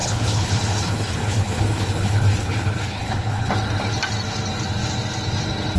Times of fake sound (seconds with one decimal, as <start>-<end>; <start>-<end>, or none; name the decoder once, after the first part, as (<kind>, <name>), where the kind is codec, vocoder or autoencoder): 0.0-3.5 (codec, HILCodec)